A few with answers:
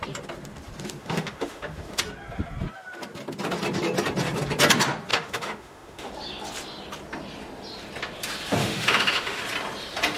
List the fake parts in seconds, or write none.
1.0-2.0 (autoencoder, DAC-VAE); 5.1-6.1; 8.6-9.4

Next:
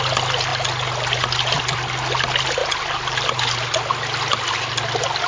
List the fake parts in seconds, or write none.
none

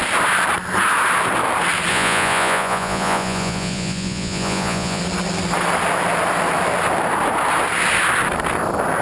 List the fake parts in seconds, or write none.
1.9-5.0 (vocoder, Vocos)

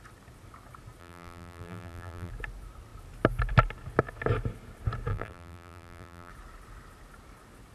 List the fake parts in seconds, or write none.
1.0-2.3 (vocoder, BigVGAN v2); 5.1-6.3

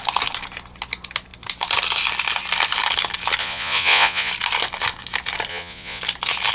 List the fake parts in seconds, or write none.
3.4-4.3 (vocoder, Vocos); 5.5-6.0

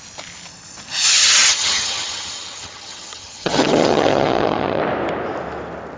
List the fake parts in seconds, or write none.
1.2-4.8 (vocoder, HiFi-GAN)

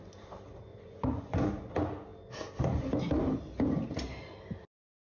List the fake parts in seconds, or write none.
0.7-1.5 (vocoder, Vocos)